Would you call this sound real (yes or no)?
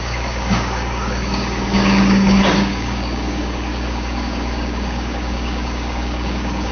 no